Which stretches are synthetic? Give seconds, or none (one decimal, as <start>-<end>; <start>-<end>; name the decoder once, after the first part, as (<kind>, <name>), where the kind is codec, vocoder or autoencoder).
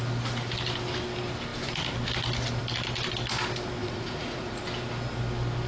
3.8-4.6 (vocoder, Vocos)